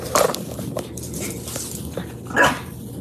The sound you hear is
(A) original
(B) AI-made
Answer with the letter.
A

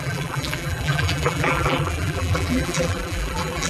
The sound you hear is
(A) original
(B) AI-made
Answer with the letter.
B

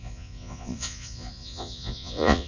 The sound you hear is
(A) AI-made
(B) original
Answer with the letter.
A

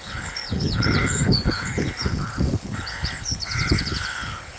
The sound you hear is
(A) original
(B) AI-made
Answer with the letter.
B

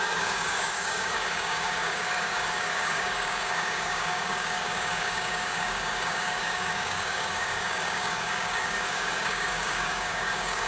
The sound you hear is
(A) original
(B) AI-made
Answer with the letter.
B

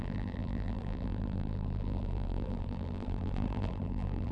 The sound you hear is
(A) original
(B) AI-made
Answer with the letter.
B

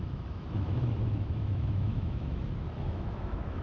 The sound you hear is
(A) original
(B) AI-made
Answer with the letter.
B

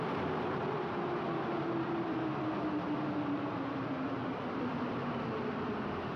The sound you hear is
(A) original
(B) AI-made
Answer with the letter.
A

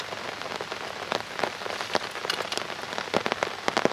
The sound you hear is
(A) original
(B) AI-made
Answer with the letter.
A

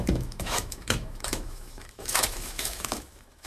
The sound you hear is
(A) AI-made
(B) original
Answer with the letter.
A